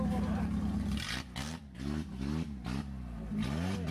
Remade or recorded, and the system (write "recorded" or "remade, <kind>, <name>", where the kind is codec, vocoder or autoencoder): recorded